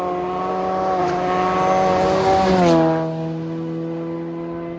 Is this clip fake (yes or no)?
no